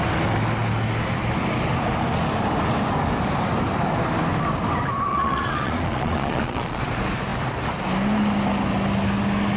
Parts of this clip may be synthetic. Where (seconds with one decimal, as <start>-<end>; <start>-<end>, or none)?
5.1-6.8